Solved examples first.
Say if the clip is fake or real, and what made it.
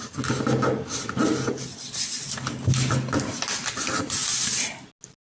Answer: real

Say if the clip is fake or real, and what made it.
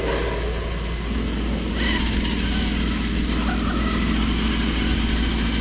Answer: real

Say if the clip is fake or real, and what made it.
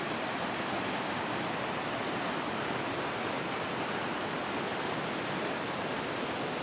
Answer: real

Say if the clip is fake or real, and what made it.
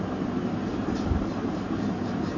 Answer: fake, vocoder, BigVGAN v2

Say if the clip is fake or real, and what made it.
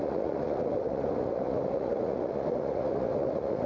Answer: fake, vocoder, Vocos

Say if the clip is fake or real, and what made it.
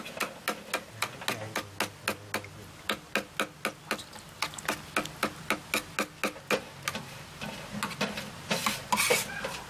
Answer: real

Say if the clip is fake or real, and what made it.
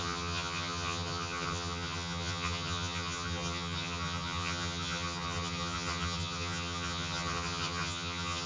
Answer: fake, vocoder, HiFi-GAN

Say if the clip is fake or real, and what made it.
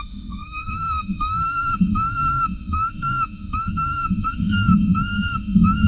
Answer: fake, autoencoder, DAC-VAE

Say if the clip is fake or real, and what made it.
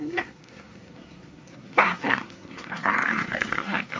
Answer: fake, codec, SNAC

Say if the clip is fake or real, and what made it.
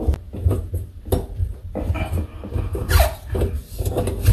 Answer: real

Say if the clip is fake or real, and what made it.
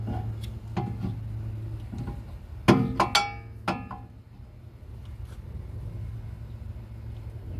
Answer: real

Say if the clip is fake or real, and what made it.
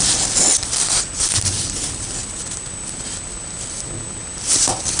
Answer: fake, vocoder, BigVGAN v2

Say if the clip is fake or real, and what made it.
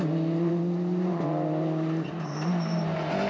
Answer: real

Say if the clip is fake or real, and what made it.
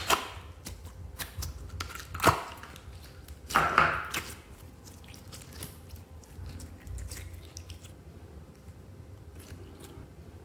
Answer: real